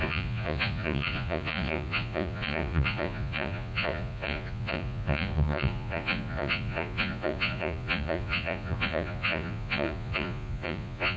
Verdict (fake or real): fake